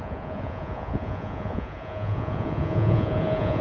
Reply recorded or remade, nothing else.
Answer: remade